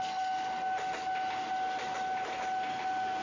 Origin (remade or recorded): recorded